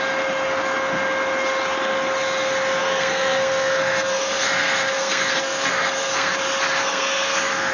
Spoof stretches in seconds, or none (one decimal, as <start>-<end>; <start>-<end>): 2.8-6.3; 6.8-7.7